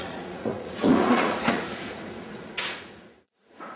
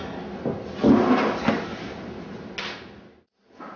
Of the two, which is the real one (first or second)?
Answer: second